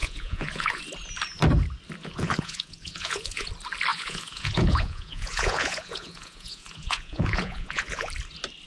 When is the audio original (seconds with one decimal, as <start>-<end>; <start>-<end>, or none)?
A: 0.8-2.0; 3.5-3.9; 8.1-8.7